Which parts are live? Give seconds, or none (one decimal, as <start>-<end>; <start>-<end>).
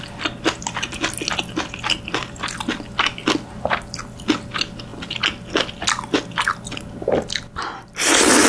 0.0-8.5